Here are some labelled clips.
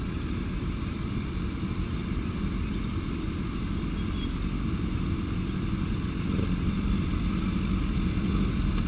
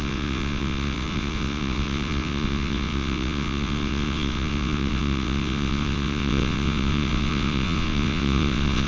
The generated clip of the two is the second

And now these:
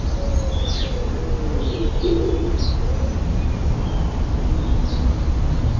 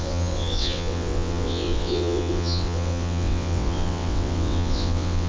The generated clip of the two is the second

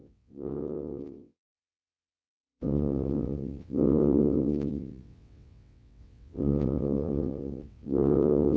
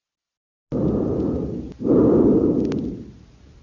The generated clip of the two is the first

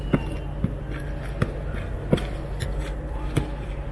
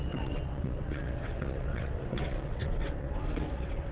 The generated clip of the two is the second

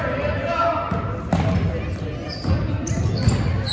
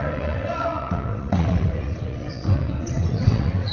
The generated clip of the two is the second